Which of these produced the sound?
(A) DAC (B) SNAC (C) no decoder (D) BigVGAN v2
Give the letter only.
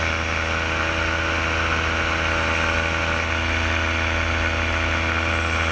C